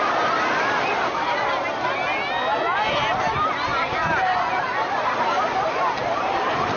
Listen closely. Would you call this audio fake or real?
real